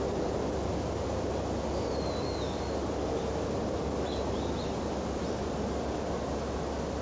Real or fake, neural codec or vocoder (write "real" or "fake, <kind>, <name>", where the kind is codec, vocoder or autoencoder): real